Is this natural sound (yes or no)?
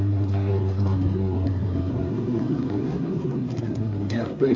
no